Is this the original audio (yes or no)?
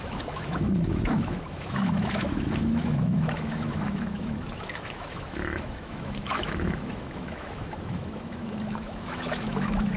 no